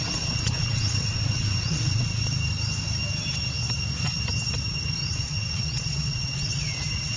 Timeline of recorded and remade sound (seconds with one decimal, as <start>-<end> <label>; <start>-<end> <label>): 0.0-2.2 remade; 2.2-5.0 recorded; 5.0-7.2 remade